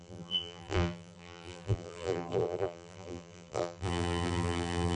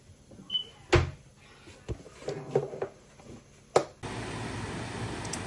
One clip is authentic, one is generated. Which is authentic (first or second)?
second